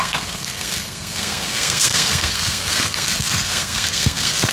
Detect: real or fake fake